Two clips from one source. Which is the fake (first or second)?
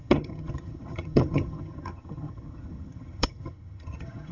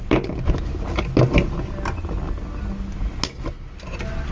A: first